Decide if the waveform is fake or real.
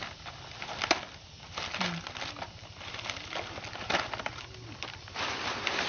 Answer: real